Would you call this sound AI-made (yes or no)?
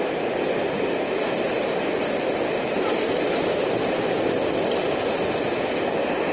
no